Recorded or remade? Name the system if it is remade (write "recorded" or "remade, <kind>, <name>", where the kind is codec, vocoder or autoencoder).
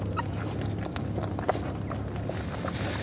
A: recorded